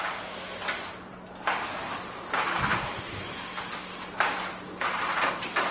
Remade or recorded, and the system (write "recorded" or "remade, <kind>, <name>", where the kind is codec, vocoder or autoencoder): recorded